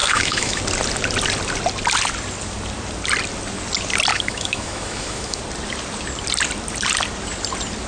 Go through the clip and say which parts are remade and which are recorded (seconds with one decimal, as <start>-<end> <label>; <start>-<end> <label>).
0.0-0.6 remade; 0.6-4.1 recorded; 4.1-5.4 remade; 5.4-7.9 recorded